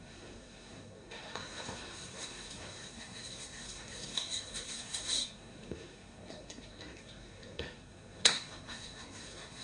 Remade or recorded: remade